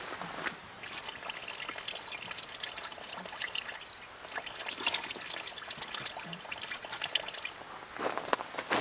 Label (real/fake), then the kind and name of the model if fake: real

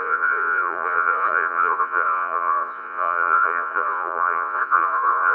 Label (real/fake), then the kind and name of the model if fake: fake, vocoder, Vocos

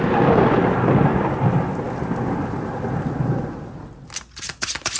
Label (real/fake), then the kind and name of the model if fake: real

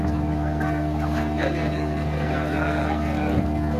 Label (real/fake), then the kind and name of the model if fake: fake, codec, SNAC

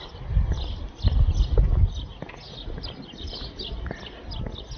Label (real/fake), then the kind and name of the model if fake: real